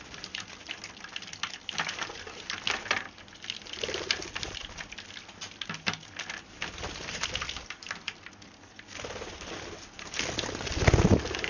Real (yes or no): yes